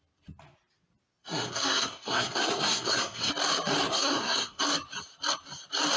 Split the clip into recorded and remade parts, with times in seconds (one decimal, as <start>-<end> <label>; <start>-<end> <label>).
0.0-1.2 recorded; 1.2-3.3 remade; 3.3-3.9 recorded; 3.9-4.6 remade; 4.6-6.0 recorded